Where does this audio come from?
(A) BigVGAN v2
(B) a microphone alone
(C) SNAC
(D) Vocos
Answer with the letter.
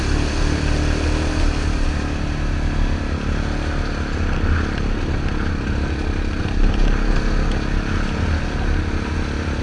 B